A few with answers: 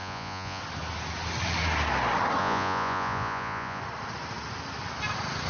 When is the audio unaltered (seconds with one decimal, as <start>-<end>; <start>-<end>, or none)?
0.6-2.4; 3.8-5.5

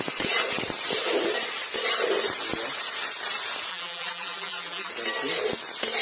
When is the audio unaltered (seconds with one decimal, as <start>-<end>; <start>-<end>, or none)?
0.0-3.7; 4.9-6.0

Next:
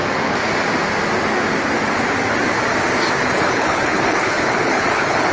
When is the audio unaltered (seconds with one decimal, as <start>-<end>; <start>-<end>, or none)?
0.0-3.2

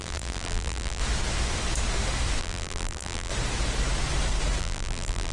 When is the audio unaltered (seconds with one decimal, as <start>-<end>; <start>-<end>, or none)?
1.0-2.4; 3.3-4.6

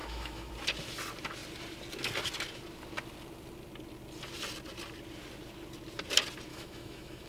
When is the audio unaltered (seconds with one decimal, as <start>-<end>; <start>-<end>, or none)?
0.5-6.5